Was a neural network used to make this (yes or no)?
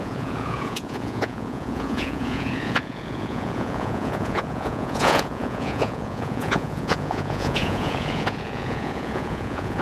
yes